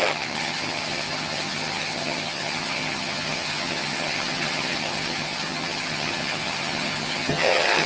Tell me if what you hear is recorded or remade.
remade